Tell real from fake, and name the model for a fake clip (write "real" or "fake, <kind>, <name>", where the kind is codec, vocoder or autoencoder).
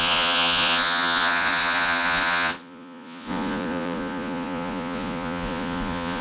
fake, vocoder, Vocos